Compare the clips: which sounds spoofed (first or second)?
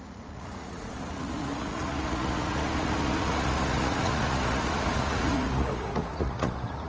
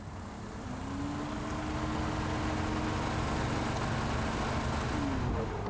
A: first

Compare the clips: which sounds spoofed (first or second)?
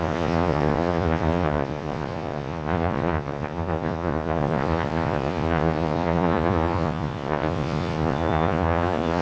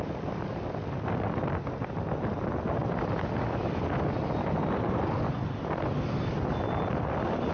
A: first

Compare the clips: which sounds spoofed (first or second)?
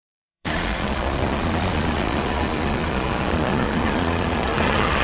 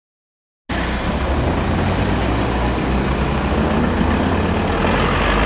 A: first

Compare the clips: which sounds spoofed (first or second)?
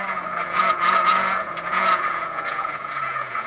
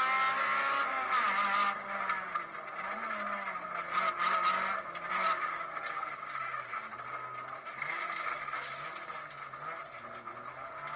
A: first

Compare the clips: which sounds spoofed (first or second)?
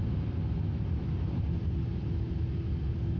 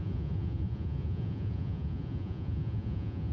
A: second